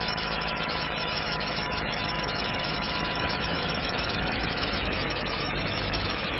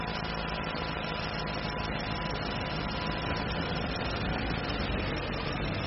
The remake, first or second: first